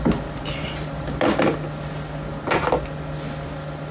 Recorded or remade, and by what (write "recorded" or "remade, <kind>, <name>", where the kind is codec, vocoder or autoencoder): recorded